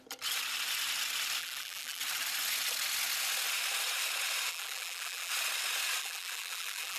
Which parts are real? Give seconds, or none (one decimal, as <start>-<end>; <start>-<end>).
0.0-1.4; 2.0-4.5; 5.3-6.0